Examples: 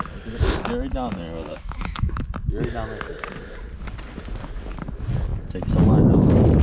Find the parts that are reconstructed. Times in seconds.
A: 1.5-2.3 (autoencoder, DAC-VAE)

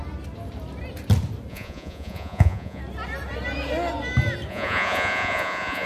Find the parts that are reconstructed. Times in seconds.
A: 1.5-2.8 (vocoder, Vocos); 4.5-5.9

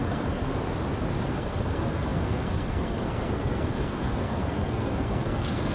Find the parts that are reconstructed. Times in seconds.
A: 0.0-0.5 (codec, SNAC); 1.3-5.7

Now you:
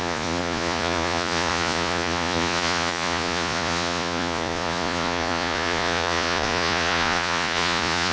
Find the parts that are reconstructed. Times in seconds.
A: 0.0-8.1 (vocoder, Vocos)

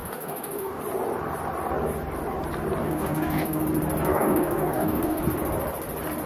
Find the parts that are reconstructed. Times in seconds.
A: 0.0-0.8 (codec, DAC); 2.8-3.6; 4.1-5.2

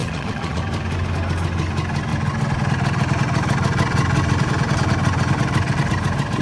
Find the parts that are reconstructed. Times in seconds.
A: 0.0-0.6 (vocoder, Vocos)

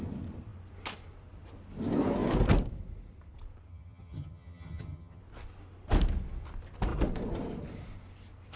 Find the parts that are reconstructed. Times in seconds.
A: 3.7-5.2 (vocoder, HiFi-GAN)